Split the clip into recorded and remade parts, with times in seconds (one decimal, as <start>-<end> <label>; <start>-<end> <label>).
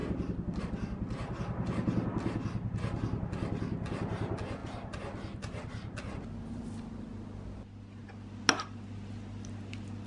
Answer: 0.0-10.1 recorded